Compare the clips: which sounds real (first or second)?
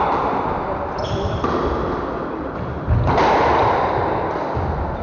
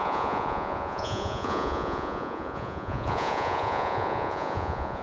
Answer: first